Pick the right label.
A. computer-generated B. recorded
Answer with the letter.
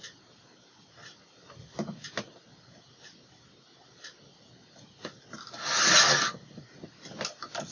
B